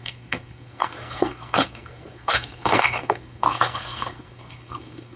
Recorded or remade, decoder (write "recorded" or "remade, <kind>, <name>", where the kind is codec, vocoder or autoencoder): remade, codec, SNAC